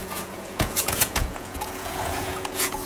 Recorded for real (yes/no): no